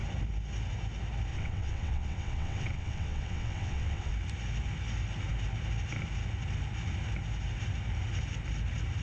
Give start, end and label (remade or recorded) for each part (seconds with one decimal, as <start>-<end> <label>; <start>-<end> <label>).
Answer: 0.0-1.3 recorded; 1.3-4.1 remade; 4.1-9.0 recorded